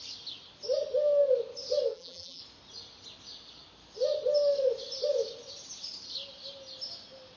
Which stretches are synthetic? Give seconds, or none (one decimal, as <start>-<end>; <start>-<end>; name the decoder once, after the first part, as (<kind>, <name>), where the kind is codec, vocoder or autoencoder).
1.9-2.4 (vocoder, BigVGAN v2)